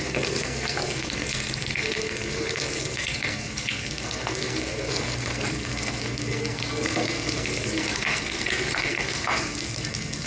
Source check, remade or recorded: remade